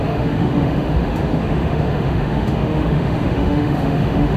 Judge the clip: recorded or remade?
remade